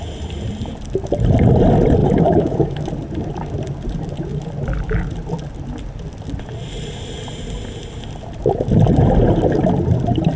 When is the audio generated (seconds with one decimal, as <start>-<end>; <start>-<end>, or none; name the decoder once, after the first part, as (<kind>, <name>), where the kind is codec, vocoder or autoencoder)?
2.0-2.9 (autoencoder, DAC-VAE)